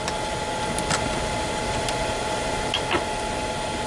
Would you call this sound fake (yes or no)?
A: no